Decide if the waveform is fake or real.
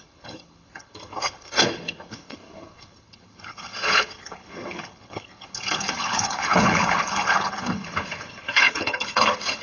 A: fake